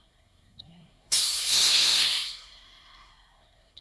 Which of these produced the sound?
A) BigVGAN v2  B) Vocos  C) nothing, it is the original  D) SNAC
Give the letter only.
D